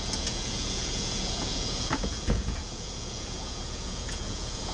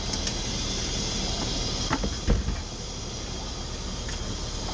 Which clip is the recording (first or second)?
second